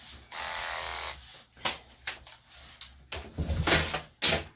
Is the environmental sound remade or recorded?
recorded